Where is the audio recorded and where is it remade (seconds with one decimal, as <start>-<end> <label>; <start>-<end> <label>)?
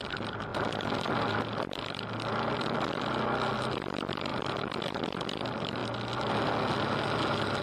0.0-4.3 recorded; 4.3-4.8 remade; 4.8-7.6 recorded